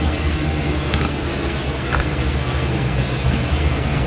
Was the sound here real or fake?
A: fake